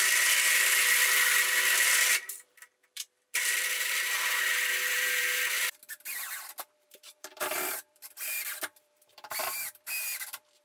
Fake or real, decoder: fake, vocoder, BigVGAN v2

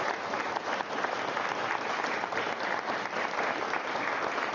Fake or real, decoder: real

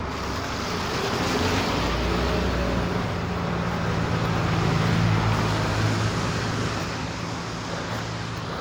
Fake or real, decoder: real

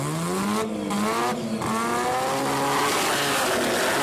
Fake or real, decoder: real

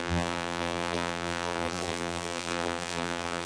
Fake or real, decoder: fake, vocoder, BigVGAN v2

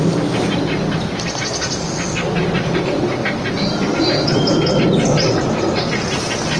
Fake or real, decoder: real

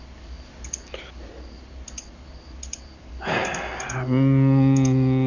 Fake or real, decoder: real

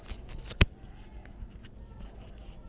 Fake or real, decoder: real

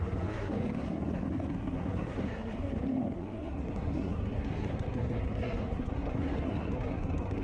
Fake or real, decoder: fake, codec, SNAC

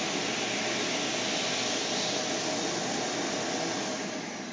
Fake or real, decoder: real